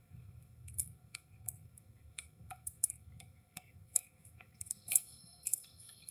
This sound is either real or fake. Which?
fake